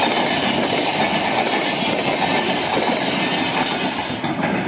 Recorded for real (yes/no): yes